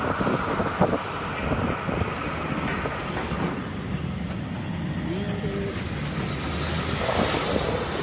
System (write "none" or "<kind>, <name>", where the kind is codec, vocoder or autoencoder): none